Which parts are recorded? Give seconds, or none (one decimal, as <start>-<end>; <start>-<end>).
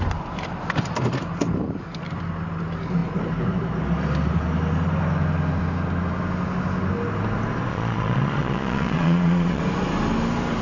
0.0-7.7; 9.6-10.6